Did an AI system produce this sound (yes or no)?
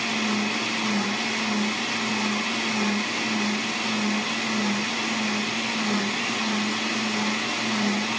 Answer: no